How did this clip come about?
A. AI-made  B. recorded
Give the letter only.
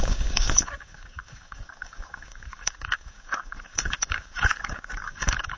A